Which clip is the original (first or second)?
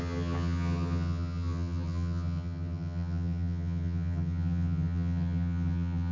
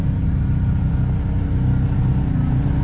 second